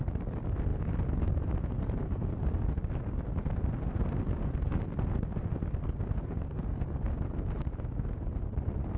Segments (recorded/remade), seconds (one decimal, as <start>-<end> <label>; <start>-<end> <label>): 0.0-9.0 recorded